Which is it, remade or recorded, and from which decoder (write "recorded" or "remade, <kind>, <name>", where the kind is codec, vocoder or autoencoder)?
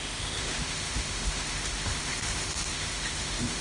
remade, autoencoder, DAC-VAE